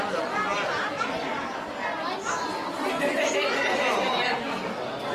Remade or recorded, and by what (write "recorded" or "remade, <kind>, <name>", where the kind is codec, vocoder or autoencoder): recorded